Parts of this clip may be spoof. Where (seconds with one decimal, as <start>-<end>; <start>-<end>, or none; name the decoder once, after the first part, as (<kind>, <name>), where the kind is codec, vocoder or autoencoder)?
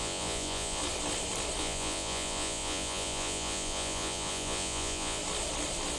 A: 0.0-0.8 (vocoder, Vocos); 1.6-5.2